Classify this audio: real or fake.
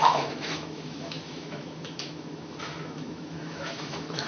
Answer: fake